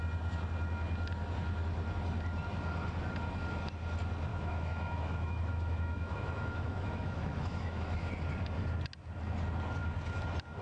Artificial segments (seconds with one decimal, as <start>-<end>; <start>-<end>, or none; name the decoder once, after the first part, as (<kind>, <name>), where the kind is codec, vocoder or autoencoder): 4.3-8.1 (autoencoder, DAC-VAE)